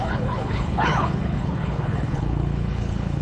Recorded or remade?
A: remade